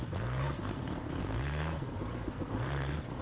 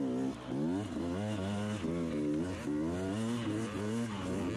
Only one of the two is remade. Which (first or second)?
first